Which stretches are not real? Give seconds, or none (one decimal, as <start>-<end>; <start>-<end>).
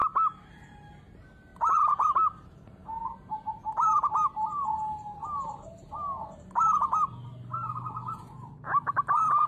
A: none